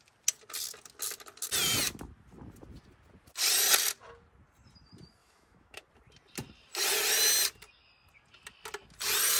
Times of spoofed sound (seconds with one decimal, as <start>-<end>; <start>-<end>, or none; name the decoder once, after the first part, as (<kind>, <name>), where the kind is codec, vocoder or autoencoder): 5.2-5.8 (autoencoder, DAC-VAE)